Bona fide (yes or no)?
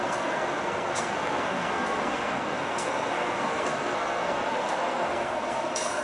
no